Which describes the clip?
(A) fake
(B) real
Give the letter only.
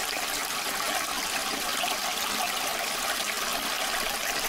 B